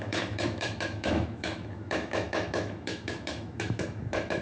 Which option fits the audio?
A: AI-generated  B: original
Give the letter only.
A